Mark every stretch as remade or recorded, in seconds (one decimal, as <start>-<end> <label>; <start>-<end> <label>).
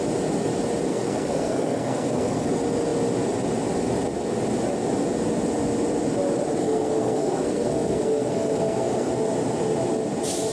0.0-0.9 recorded; 0.9-2.5 remade; 2.5-6.6 recorded; 6.6-9.1 remade; 9.1-10.5 recorded